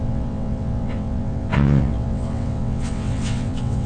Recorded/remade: remade